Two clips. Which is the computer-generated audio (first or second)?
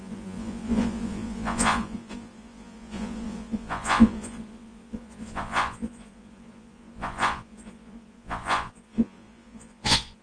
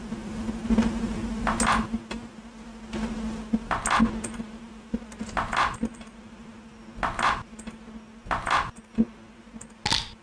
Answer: first